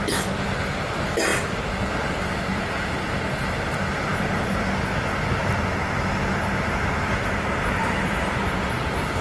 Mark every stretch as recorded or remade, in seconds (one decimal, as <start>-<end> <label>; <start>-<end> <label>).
0.0-9.2 recorded